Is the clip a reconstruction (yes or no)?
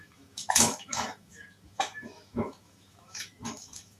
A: yes